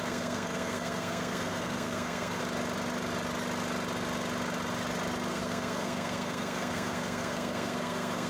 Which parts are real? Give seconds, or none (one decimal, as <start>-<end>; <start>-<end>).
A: 2.4-5.3